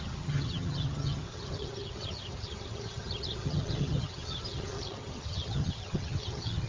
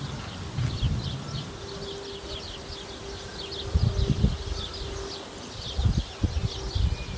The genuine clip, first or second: second